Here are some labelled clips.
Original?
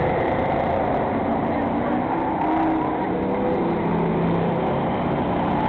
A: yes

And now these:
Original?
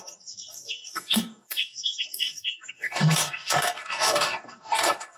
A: no